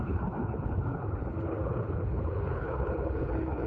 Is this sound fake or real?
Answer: fake